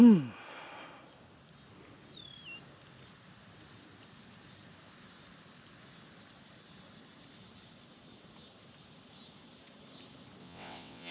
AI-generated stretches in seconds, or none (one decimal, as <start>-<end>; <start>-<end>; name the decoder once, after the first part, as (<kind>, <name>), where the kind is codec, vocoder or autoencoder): 10.4-11.1 (vocoder, WaveNeXt)

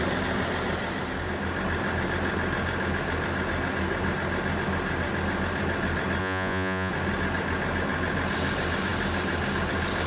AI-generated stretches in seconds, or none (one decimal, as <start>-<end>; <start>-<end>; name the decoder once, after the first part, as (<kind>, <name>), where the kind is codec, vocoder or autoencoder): 6.2-6.9 (vocoder, Vocos)

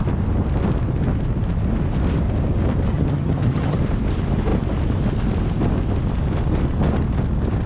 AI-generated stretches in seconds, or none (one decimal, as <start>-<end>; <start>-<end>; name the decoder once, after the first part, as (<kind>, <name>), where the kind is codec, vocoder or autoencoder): 2.9-3.8 (vocoder, HiFi-GAN)

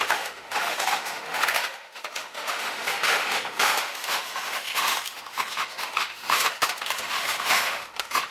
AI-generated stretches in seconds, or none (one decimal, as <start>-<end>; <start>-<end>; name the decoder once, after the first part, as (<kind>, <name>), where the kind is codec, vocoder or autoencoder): 0.0-8.3 (autoencoder, DAC-VAE)

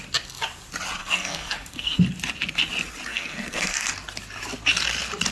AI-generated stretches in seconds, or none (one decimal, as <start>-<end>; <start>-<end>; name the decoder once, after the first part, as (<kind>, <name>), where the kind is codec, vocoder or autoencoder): 1.0-2.0 (codec, SNAC); 3.1-3.9

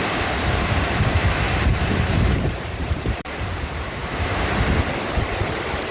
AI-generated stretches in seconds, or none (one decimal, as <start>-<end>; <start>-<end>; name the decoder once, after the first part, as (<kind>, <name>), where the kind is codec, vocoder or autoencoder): 1.1-4.6 (vocoder, BigVGAN v2)

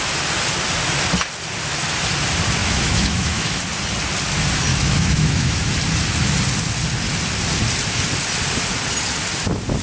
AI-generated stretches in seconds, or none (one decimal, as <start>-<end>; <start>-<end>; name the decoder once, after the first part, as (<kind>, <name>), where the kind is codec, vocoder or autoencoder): 2.6-3.6 (autoencoder, DAC-VAE); 4.7-5.7